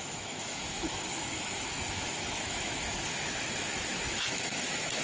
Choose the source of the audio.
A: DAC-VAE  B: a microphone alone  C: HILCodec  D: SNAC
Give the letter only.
A